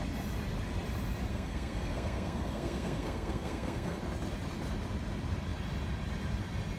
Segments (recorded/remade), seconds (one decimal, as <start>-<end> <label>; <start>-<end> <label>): 0.0-1.3 recorded; 1.3-4.0 remade; 4.0-6.8 recorded